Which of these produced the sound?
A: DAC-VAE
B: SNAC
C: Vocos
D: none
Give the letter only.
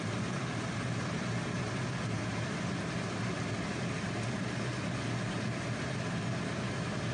D